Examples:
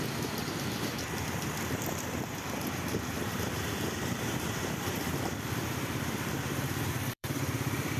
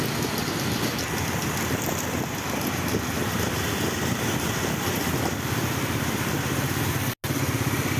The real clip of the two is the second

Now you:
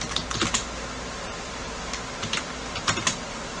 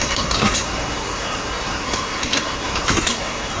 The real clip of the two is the first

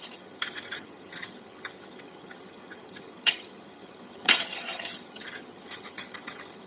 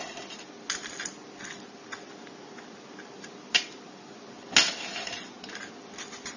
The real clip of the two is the second